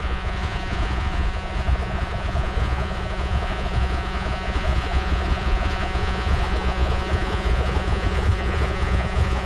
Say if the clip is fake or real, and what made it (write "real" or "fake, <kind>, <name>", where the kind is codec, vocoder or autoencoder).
fake, vocoder, Vocos